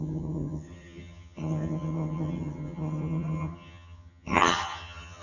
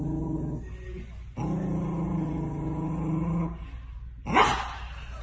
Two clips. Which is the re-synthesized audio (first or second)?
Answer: first